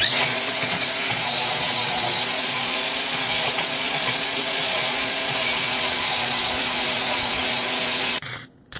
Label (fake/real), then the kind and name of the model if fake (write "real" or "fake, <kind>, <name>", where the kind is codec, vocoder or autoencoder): fake, vocoder, Vocos